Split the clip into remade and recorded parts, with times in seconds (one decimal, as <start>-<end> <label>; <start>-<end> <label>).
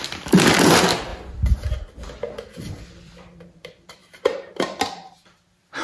0.0-1.1 remade; 1.1-2.5 recorded; 2.5-4.0 remade; 4.0-4.5 recorded; 4.5-5.8 remade